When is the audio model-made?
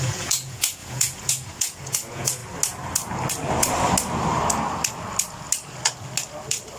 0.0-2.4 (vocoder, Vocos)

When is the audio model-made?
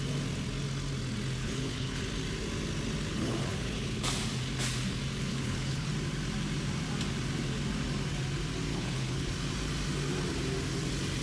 1.4-2.0 (codec, HILCodec); 3.1-4.1; 5.3-5.9; 8.7-9.3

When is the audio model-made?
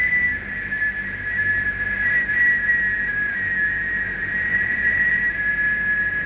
4.5-5.2 (vocoder, Vocos)